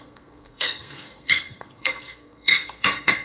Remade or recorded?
remade